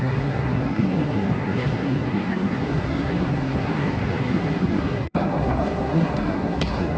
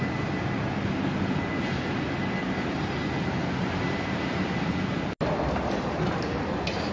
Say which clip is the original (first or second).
second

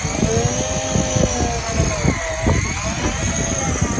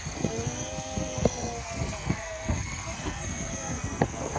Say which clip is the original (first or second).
first